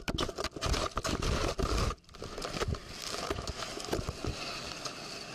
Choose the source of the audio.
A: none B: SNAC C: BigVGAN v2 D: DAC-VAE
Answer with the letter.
A